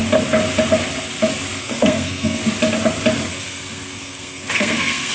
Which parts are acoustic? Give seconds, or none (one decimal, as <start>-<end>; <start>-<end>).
0.0-1.6; 2.4-3.3